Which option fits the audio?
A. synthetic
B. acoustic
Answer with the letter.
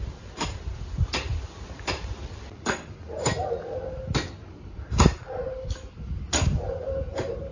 B